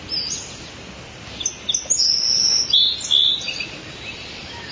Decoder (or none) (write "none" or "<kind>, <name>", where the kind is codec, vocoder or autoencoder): none